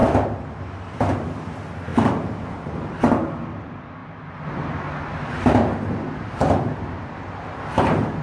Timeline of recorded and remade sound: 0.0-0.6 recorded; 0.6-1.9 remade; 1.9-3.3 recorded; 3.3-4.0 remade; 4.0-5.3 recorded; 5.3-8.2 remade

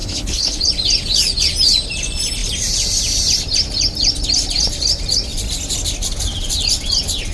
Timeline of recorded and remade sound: 0.0-0.6 remade; 0.6-7.3 recorded

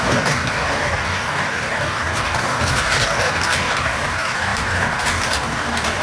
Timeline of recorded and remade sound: 0.0-6.0 remade

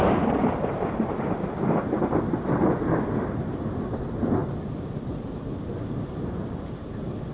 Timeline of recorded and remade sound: 0.0-7.3 recorded

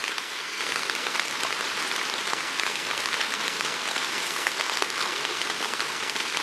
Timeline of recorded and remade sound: 0.0-1.3 remade; 1.3-2.3 recorded; 2.3-6.4 remade

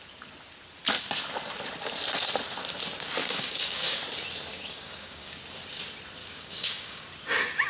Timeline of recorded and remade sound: 0.0-3.2 recorded; 3.2-4.0 remade; 4.0-4.5 recorded; 4.5-5.4 remade; 5.4-6.2 recorded; 6.2-7.0 remade; 7.0-7.7 recorded